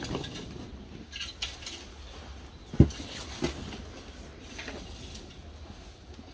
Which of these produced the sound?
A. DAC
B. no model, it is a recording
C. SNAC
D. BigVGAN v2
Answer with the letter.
B